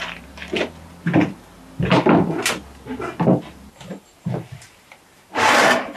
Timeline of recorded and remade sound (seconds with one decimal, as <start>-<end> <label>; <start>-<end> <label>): 0.0-0.4 remade; 0.4-4.0 recorded; 4.0-6.0 remade